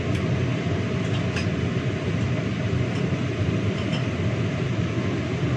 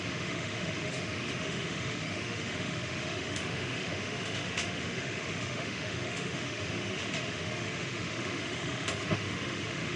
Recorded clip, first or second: first